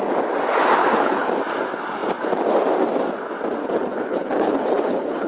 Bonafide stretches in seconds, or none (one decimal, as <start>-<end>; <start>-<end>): 0.0-0.8; 1.4-3.6